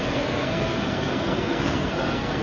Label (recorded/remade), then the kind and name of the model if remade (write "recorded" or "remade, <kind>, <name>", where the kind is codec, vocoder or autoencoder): remade, codec, SNAC